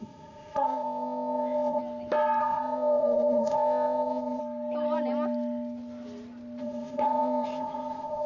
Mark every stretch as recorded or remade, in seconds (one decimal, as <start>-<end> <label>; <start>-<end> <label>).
0.0-1.8 remade; 1.8-2.4 recorded; 2.4-4.4 remade; 4.4-6.6 recorded; 6.6-8.3 remade